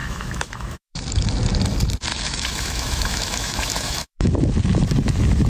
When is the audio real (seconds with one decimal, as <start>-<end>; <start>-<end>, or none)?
1.0-2.1; 4.3-5.5